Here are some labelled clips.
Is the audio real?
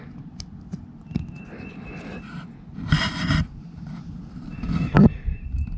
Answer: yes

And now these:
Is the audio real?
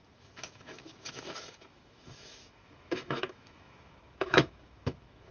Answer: no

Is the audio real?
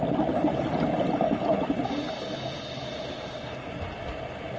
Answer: yes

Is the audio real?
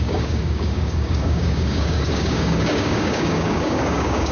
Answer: no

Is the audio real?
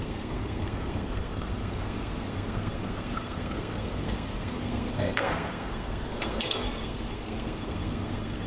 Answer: no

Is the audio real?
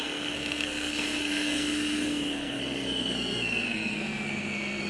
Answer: no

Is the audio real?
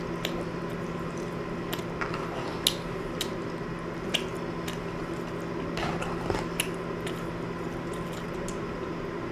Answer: yes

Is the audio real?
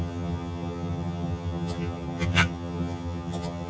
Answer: no